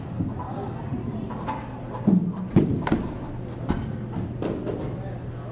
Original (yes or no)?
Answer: yes